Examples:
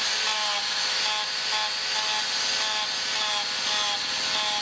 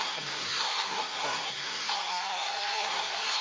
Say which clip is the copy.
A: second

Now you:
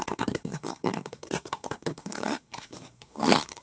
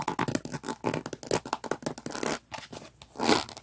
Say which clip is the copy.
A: first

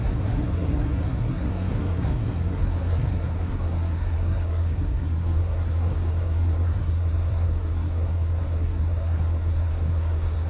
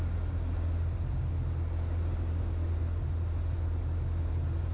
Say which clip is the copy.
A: first